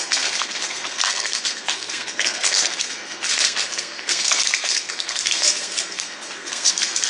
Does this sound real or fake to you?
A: fake